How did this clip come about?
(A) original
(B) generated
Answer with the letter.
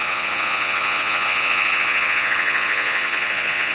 B